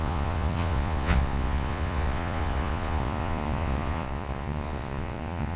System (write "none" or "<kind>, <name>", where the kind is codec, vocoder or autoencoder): vocoder, Vocos